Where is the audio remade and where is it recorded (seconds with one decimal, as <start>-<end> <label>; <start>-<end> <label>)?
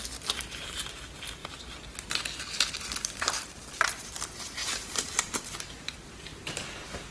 0.0-1.4 recorded; 1.4-2.2 remade; 2.2-4.6 recorded; 4.6-6.5 remade; 6.5-7.1 recorded